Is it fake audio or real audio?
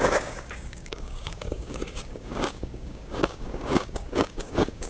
fake